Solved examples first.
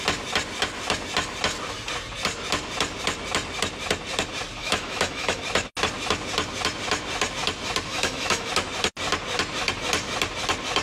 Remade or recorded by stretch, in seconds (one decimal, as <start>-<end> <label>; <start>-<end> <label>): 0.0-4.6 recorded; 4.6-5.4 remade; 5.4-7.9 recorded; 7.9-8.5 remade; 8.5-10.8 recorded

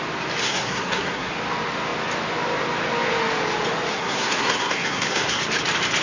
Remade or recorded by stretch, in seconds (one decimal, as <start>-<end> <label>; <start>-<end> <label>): 0.0-0.4 recorded; 0.4-1.3 remade; 1.3-3.9 recorded; 3.9-5.4 remade; 5.4-6.0 recorded

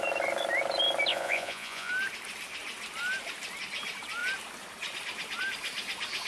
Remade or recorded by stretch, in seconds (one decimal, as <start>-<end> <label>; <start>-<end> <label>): 0.0-1.1 recorded; 1.1-1.9 remade; 1.9-6.3 recorded

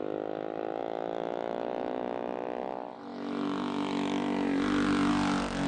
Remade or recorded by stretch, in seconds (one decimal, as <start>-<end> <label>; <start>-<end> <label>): 0.0-5.7 recorded